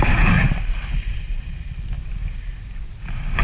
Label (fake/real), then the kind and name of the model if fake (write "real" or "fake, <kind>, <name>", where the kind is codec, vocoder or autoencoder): real